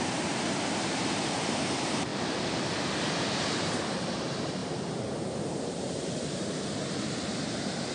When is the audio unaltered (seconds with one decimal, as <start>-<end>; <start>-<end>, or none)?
none